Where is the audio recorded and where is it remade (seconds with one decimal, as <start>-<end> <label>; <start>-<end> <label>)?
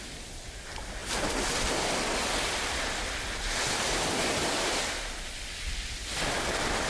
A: 0.0-6.9 recorded